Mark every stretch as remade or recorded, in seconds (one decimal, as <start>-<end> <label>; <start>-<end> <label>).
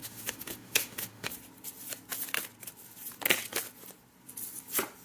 0.0-1.3 remade; 1.3-5.0 recorded